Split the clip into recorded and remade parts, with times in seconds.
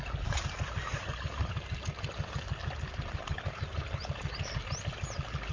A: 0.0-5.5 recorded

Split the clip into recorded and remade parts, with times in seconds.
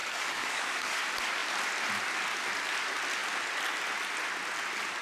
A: 0.0-1.0 remade; 1.0-5.0 recorded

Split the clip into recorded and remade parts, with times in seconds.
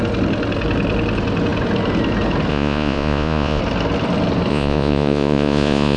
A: 0.0-2.5 recorded; 2.5-3.6 remade; 3.6-4.5 recorded; 4.5-6.0 remade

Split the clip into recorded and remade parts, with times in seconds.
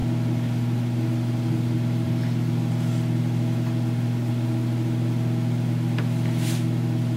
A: 0.0-7.2 recorded